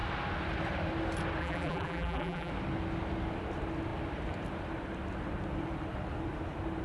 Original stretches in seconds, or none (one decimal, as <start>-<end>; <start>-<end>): 0.0-1.4; 2.5-6.8